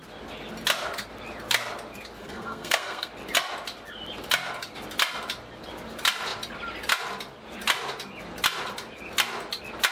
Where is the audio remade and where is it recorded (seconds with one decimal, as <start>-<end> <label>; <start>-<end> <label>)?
0.0-2.2 recorded; 2.2-3.1 remade; 3.1-9.9 recorded